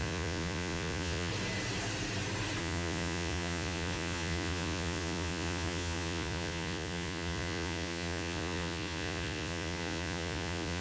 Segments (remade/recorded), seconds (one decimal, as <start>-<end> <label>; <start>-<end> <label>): 0.0-1.3 remade; 1.3-2.6 recorded; 2.6-10.8 remade